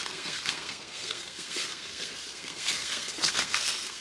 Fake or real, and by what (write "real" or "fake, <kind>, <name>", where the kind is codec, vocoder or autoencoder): fake, codec, SNAC